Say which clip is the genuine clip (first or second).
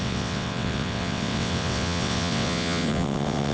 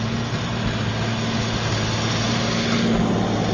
second